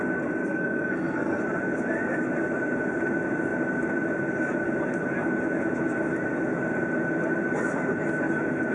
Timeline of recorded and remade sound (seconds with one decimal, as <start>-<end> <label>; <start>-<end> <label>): 0.0-0.4 recorded; 0.4-1.4 remade; 1.4-8.7 recorded